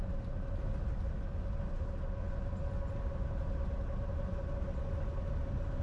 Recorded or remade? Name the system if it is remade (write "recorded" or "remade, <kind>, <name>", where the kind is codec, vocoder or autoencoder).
recorded